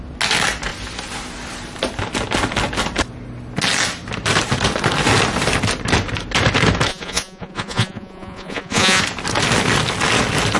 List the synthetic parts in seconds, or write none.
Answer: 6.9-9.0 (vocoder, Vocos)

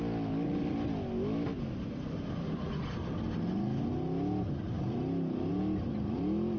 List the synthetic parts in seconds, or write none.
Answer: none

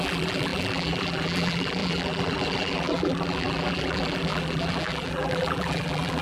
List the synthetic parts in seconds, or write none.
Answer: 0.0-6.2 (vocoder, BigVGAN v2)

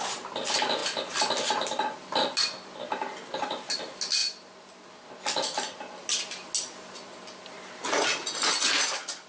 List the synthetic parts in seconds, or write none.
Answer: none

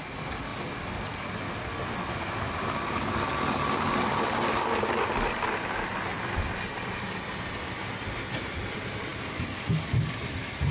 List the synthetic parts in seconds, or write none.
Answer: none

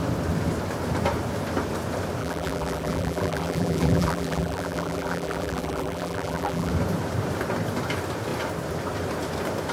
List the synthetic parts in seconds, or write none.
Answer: 2.2-6.7 (vocoder, BigVGAN v2)